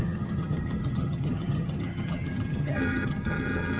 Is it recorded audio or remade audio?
remade